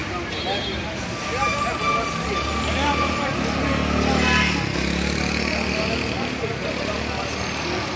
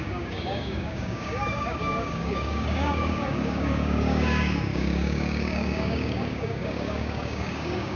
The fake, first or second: second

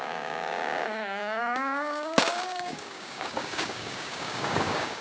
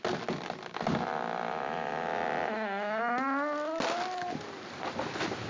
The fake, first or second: first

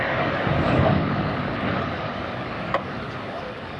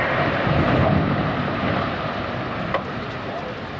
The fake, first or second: first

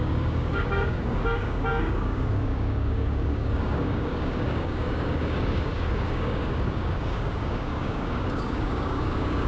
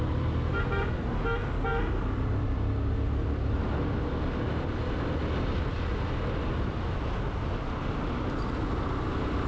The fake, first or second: first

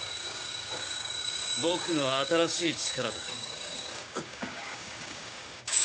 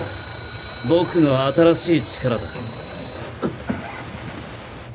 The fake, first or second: first